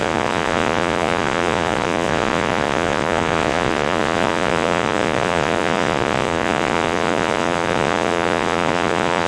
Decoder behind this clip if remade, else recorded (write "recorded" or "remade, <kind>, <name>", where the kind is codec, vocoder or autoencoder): remade, vocoder, Vocos